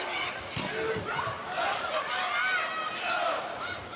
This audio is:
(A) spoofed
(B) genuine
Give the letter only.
B